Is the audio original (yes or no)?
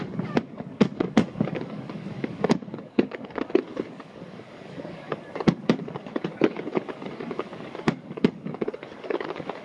no